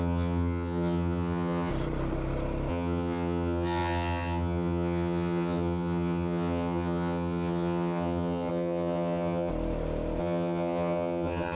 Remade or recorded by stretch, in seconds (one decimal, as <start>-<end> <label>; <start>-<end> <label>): 0.0-1.7 remade; 1.7-2.7 recorded; 2.7-9.5 remade; 9.5-10.2 recorded; 10.2-11.6 remade